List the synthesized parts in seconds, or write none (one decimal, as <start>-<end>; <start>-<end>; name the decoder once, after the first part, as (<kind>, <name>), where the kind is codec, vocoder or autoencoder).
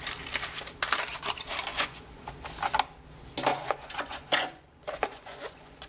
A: 1.7-2.2 (vocoder, Vocos); 3.5-5.9